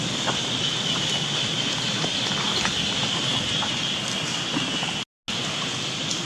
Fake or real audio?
real